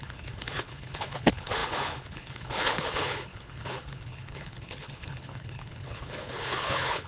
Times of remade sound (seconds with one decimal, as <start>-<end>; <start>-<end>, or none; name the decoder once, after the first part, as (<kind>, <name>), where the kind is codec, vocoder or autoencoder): 0.0-7.1 (codec, HILCodec)